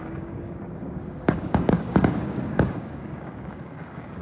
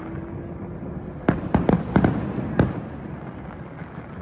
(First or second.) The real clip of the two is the second